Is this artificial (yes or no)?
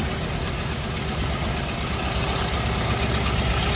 no